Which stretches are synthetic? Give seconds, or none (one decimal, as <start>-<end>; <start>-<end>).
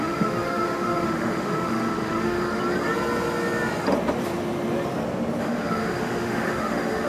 0.0-2.6; 5.4-7.1